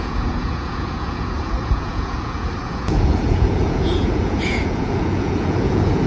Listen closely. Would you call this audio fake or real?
fake